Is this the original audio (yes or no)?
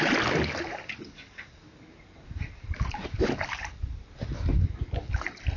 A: yes